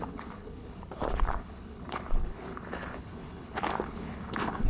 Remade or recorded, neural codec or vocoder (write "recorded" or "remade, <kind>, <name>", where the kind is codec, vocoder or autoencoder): remade, codec, HILCodec